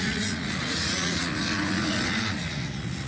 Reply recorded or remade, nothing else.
remade